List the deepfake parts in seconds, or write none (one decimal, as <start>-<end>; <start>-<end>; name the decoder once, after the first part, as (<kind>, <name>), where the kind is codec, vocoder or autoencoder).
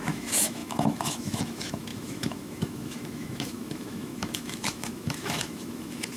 0.0-6.2 (autoencoder, DAC-VAE)